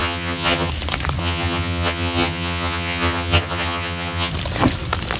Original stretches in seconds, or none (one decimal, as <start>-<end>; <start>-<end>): 0.7-1.2; 4.3-5.2